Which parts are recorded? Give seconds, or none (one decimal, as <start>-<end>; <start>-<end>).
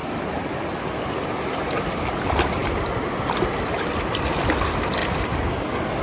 0.0-6.0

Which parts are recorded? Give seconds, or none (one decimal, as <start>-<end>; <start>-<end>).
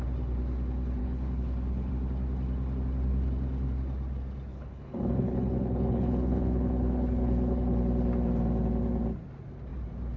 0.0-1.0; 1.9-4.5; 7.8-10.2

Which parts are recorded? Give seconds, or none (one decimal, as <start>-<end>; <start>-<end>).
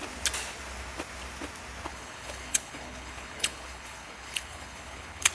0.0-1.9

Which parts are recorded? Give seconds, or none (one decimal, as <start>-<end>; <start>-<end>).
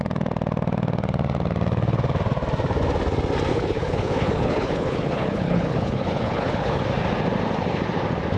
0.0-3.5; 6.8-8.4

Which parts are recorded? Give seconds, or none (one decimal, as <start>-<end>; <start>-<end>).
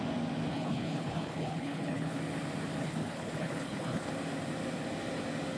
0.0-0.5; 2.2-2.8; 4.1-5.6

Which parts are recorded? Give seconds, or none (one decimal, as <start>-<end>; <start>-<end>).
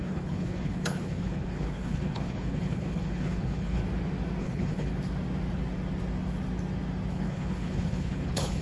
3.8-4.4; 4.9-7.1